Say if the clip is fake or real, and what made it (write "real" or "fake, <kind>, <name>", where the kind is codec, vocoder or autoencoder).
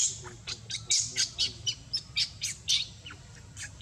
real